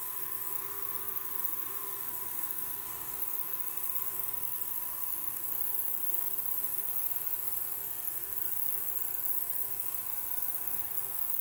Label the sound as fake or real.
fake